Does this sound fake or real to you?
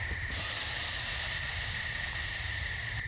real